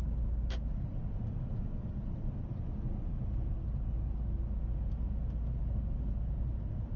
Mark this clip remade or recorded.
recorded